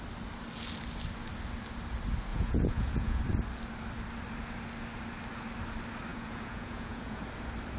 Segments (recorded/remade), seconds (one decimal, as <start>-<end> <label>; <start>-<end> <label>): 0.0-2.3 recorded; 2.3-3.2 remade; 3.2-6.1 recorded; 6.1-7.2 remade; 7.2-7.8 recorded